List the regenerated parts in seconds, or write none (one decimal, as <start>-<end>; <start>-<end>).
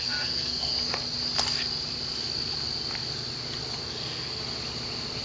0.0-0.7; 3.8-4.4